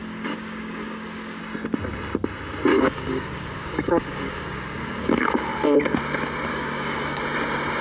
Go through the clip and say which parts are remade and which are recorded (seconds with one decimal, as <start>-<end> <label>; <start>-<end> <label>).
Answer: 0.0-1.4 remade; 1.4-2.7 recorded; 2.7-5.4 remade; 5.4-6.5 recorded; 6.5-7.2 remade; 7.2-7.8 recorded